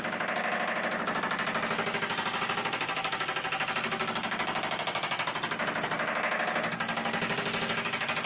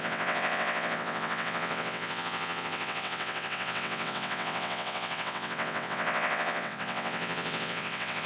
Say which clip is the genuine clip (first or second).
first